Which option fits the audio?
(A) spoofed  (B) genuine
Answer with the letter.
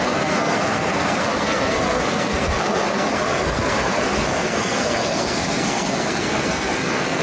A